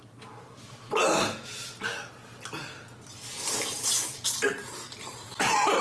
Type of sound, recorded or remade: recorded